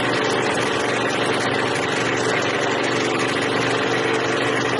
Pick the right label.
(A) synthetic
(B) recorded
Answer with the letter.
B